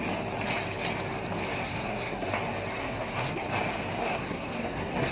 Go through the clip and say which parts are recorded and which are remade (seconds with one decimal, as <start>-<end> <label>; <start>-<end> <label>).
0.0-1.6 recorded; 1.6-2.3 remade; 2.3-2.8 recorded; 2.8-3.5 remade; 3.5-4.0 recorded; 4.0-5.1 remade